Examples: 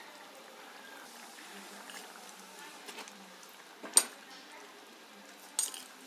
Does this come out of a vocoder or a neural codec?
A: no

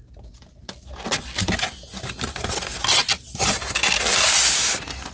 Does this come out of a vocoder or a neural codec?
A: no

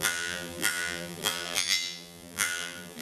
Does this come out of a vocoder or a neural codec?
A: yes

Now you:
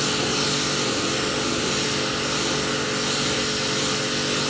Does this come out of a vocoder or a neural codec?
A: no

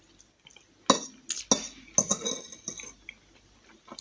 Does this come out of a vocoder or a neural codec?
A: no